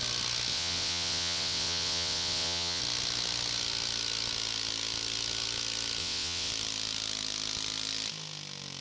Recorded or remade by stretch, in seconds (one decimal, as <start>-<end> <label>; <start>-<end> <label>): 0.0-0.5 recorded; 0.5-2.8 remade; 2.8-6.0 recorded; 6.0-6.5 remade; 6.5-8.8 recorded